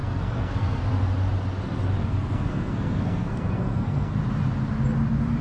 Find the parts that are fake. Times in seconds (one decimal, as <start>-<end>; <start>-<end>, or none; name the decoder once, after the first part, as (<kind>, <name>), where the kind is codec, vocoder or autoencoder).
0.0-0.8 (codec, SNAC); 2.0-4.2

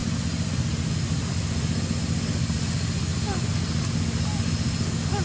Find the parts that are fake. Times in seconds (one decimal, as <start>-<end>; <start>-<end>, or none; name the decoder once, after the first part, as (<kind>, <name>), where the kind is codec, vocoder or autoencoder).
none